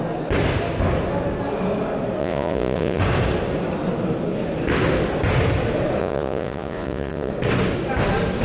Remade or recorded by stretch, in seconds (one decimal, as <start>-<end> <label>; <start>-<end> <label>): 0.0-2.2 recorded; 2.2-3.0 remade; 3.0-6.0 recorded; 6.0-7.3 remade; 7.3-8.4 recorded